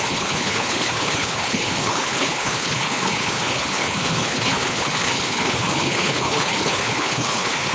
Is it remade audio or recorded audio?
remade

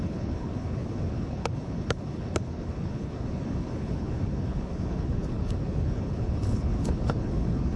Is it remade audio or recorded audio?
remade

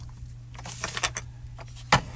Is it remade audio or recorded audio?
recorded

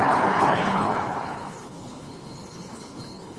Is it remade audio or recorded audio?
remade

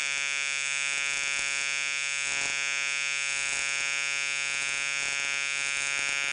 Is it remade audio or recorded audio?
recorded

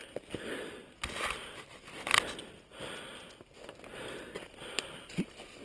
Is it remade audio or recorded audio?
recorded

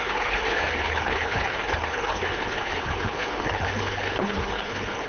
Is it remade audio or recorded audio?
remade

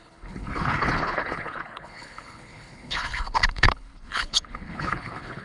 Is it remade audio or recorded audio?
remade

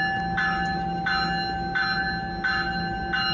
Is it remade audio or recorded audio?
recorded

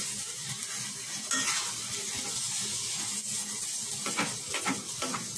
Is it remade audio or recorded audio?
recorded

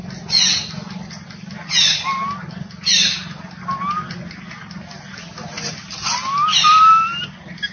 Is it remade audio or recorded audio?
recorded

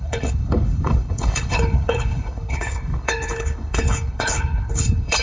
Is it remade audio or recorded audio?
remade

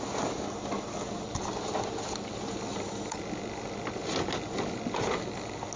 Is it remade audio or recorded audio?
recorded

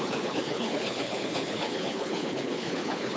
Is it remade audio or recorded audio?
remade